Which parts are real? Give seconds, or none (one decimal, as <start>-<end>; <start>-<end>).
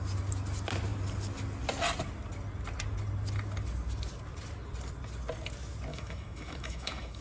0.0-5.9